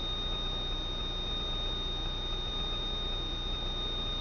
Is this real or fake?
real